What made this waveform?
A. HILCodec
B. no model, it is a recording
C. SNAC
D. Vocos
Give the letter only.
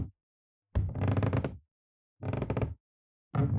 B